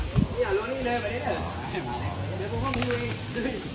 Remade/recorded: recorded